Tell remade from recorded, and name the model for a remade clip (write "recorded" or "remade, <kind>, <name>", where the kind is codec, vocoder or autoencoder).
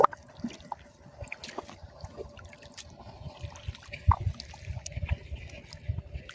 recorded